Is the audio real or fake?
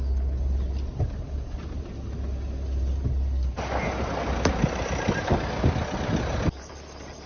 real